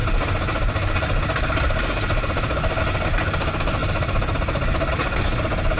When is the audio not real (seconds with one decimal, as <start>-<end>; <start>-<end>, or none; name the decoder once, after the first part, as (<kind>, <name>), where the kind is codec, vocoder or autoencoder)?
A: none